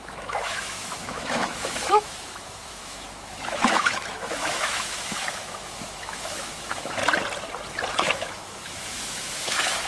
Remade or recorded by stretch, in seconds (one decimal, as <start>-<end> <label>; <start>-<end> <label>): 0.0-7.0 remade; 7.0-7.9 recorded; 7.9-9.9 remade